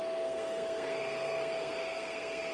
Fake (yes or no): yes